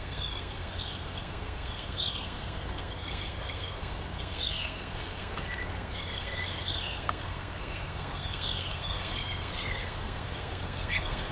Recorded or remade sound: remade